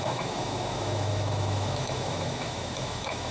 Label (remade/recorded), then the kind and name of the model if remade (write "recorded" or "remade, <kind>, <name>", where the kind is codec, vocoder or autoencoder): remade, autoencoder, DAC-VAE